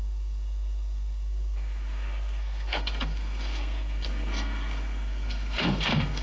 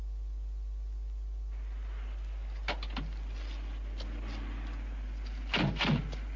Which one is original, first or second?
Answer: second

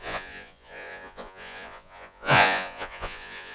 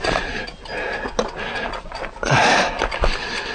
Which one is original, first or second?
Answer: second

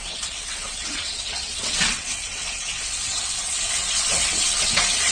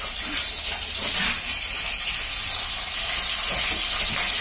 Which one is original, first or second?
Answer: second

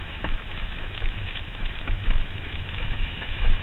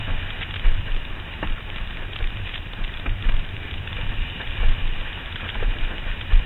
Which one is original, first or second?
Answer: second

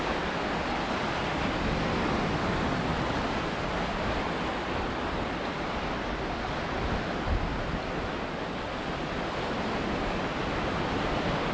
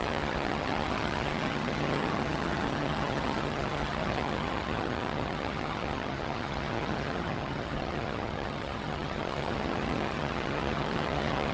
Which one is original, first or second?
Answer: first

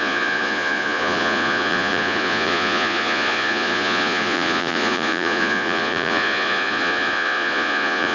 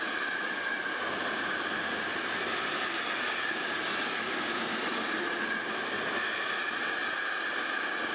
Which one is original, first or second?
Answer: second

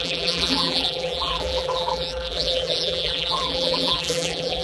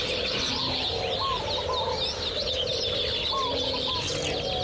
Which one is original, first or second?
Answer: second